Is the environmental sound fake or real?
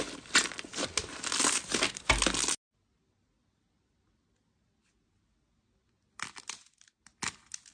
real